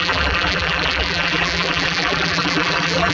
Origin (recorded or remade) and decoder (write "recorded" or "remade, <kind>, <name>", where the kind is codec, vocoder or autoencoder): remade, vocoder, BigVGAN v2